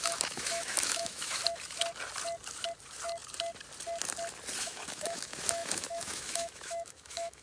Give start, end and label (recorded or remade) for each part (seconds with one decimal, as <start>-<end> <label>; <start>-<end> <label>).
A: 0.0-1.4 remade; 1.4-4.6 recorded; 4.6-7.4 remade